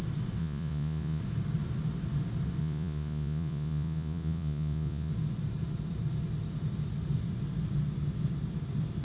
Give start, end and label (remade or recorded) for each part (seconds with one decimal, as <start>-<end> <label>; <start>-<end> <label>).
0.0-0.4 recorded; 0.4-1.2 remade; 1.2-2.6 recorded; 2.6-5.1 remade; 5.1-9.0 recorded